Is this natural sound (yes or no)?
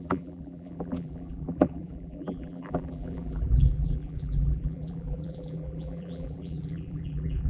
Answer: no